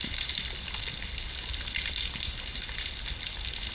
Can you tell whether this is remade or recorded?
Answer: recorded